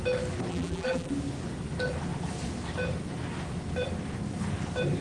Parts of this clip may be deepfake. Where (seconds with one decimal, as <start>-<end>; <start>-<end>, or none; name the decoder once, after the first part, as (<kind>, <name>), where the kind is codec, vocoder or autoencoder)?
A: 0.5-1.1 (vocoder, BigVGAN v2)